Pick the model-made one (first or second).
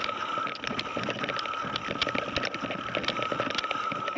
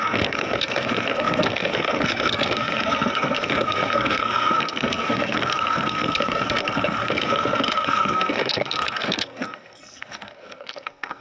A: second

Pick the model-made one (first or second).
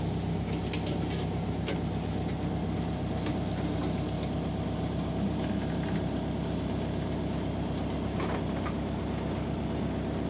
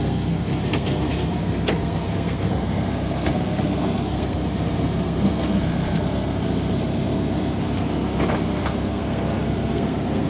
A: second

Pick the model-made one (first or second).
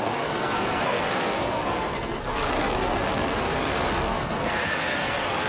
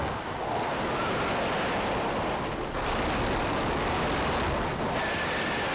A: first